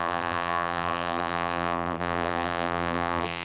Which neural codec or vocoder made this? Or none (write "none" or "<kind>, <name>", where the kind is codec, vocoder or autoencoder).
vocoder, BigVGAN v2